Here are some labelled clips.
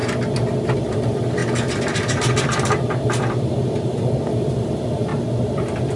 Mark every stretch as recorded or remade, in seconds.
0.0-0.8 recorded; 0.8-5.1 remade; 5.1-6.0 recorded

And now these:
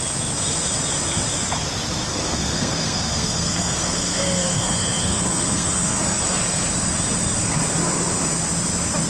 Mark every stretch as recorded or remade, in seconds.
0.0-2.1 recorded; 2.1-6.0 remade; 6.0-9.1 recorded

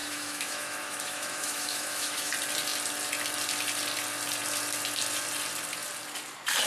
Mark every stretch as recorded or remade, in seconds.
0.0-2.3 remade; 2.3-6.7 recorded

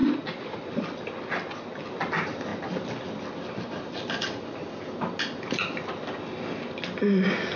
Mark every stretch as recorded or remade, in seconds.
0.0-7.6 recorded